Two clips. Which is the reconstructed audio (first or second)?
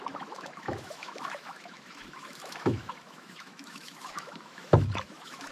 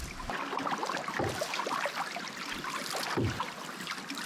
first